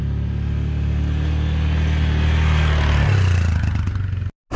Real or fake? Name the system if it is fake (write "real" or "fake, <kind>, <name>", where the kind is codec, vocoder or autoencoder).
real